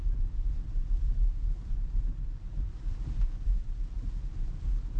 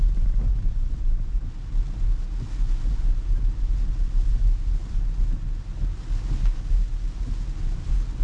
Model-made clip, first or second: first